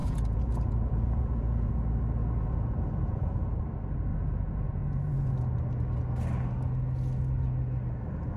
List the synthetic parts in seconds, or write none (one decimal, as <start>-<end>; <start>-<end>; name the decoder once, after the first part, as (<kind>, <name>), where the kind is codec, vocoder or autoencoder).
0.0-1.7 (vocoder, Vocos); 2.2-3.6; 4.1-5.3